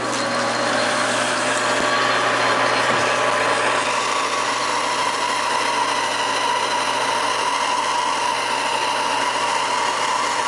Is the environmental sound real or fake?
real